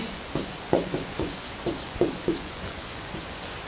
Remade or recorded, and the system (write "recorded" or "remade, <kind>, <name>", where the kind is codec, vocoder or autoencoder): remade, vocoder, Vocos